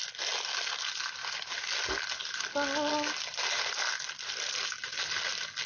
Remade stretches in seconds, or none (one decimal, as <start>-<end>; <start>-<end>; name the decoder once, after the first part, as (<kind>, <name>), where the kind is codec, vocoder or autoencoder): none

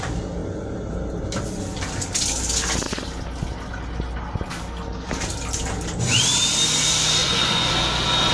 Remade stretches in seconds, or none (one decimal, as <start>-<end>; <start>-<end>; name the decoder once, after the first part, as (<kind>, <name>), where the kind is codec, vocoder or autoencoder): 7.2-7.7 (vocoder, Vocos)

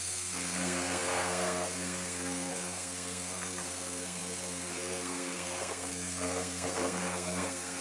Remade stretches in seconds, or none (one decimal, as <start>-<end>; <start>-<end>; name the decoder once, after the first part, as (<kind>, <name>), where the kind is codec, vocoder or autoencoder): 0.0-7.8 (codec, SNAC)

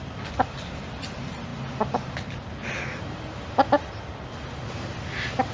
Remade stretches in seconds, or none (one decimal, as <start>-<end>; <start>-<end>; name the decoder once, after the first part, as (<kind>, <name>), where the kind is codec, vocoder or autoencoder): none

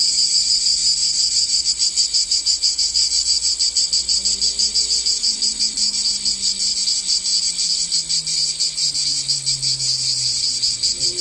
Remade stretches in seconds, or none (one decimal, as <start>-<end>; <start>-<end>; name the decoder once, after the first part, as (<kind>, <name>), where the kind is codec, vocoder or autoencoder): 2.2-3.2 (vocoder, Vocos)

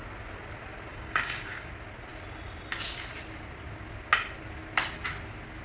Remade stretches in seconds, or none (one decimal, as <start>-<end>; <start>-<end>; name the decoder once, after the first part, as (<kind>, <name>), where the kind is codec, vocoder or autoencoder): 0.9-1.7 (codec, DAC)